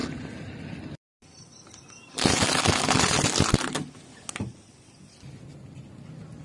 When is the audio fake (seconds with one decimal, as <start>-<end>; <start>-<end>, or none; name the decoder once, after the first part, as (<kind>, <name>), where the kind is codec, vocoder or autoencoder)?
0.0-2.7 (vocoder, BigVGAN v2)